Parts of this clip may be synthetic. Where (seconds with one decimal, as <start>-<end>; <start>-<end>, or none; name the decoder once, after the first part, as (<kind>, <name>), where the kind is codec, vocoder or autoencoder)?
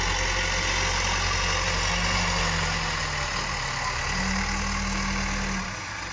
none